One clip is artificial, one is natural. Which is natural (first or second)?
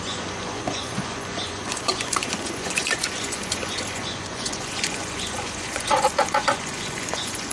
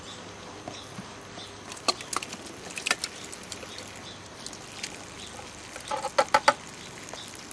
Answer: second